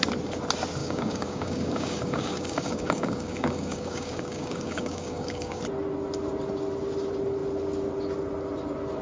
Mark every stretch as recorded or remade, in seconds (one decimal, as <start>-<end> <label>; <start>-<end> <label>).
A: 0.0-0.8 recorded; 0.8-5.6 remade; 5.6-9.0 recorded